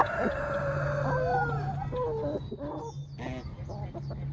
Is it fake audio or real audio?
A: real